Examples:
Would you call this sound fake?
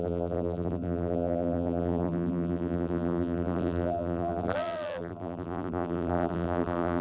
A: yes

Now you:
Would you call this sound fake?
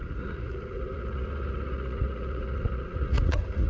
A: yes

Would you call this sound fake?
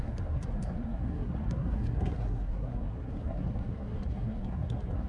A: yes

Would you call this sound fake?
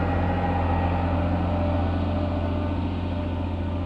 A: no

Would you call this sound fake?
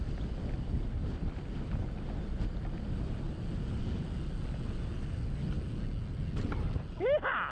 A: no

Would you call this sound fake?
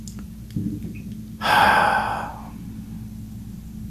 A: no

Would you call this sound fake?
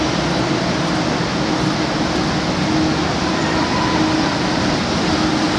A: no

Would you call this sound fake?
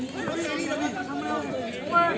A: no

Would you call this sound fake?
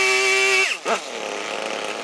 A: no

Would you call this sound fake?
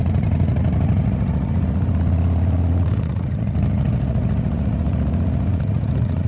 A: yes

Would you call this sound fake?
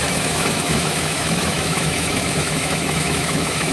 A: yes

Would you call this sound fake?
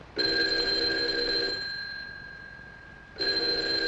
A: no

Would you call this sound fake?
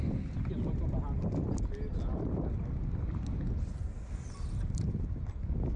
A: no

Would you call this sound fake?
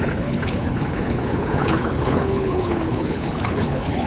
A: yes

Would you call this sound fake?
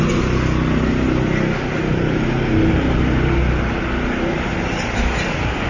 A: no